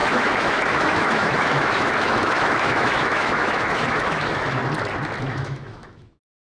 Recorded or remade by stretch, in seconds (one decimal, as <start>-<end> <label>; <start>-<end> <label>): 0.0-4.6 remade; 4.6-5.2 recorded; 5.2-6.5 remade